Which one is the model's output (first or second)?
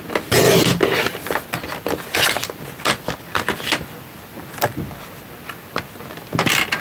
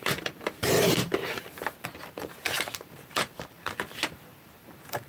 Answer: second